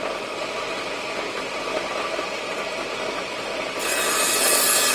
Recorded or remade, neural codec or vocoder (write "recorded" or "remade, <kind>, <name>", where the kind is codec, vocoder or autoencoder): recorded